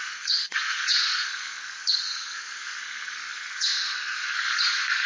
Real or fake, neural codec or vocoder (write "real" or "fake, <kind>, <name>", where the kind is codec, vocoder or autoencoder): fake, codec, SNAC